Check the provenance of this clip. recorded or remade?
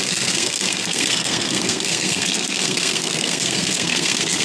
remade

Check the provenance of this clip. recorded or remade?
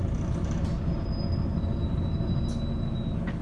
recorded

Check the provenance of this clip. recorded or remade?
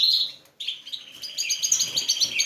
recorded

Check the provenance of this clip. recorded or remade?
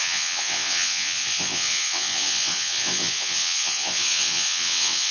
remade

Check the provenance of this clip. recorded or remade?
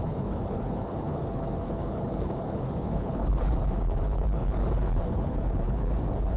remade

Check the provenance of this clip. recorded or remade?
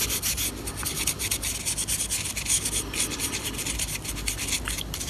recorded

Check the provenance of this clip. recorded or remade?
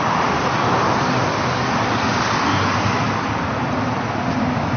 recorded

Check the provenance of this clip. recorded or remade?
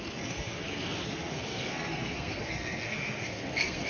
remade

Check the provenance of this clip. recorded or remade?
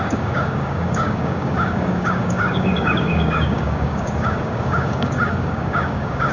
remade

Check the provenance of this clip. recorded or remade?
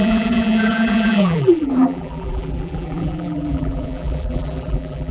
remade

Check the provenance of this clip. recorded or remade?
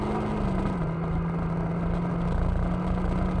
recorded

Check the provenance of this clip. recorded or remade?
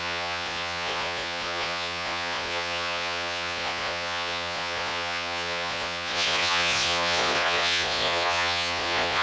remade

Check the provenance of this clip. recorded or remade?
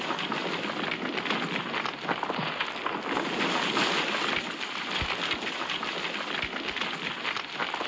recorded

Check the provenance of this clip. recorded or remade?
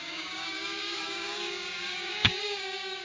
remade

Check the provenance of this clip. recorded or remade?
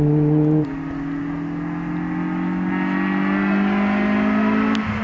recorded